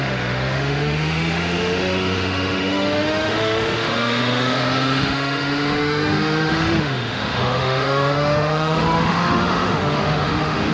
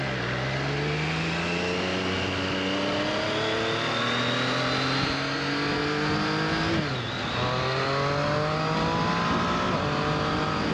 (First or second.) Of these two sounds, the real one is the second